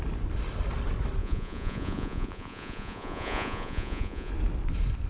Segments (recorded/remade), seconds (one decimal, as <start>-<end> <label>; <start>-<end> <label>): 0.0-1.2 recorded; 1.2-4.3 remade; 4.3-5.1 recorded

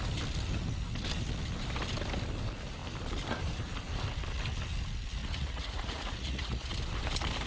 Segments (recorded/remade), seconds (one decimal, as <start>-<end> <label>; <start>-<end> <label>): 0.0-5.2 recorded; 5.2-6.7 remade; 6.7-7.5 recorded

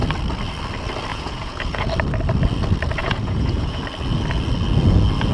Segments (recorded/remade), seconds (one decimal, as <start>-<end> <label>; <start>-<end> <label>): 0.0-1.1 recorded; 1.1-1.9 remade; 1.9-3.0 recorded; 3.0-3.8 remade; 3.8-5.3 recorded

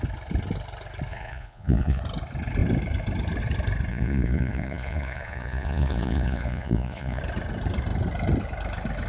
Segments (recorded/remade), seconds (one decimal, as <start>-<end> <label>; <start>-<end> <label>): 0.0-1.1 recorded; 1.1-2.0 remade; 2.0-3.9 recorded; 3.9-7.2 remade; 7.2-9.1 recorded

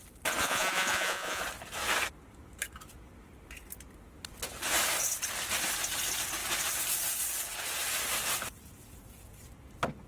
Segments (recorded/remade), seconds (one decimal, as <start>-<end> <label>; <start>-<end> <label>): 0.0-0.4 recorded; 0.4-1.4 remade; 1.4-10.1 recorded

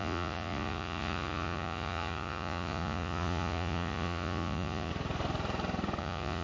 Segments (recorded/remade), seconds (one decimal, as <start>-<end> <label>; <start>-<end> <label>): 0.0-4.9 remade; 4.9-6.0 recorded; 6.0-6.4 remade

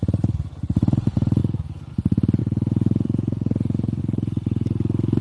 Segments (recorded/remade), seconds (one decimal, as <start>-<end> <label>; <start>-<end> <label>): 0.0-1.4 recorded; 1.4-1.9 remade; 1.9-2.4 recorded; 2.4-4.0 remade; 4.0-5.2 recorded

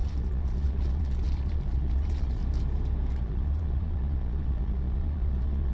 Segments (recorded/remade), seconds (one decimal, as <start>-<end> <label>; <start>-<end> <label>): 0.0-2.4 remade; 2.4-3.1 recorded; 3.1-5.7 remade